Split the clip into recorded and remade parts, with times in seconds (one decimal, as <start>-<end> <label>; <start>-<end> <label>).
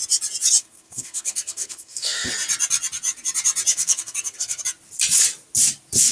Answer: 0.0-0.6 recorded; 0.6-2.3 remade; 2.3-3.7 recorded; 3.7-4.6 remade; 4.6-6.1 recorded